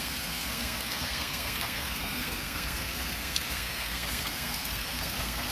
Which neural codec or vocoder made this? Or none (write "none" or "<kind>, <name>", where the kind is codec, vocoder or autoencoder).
codec, SNAC